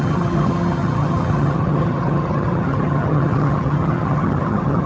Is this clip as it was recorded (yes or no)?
no